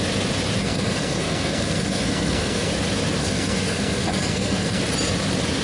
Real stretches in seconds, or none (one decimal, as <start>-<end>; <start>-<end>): 0.0-0.6; 2.7-3.2; 4.8-5.6